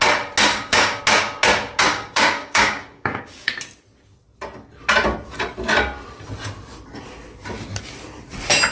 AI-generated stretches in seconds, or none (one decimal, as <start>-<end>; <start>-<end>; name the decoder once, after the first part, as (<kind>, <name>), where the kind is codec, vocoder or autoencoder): 0.5-1.0 (codec, DAC); 1.9-3.5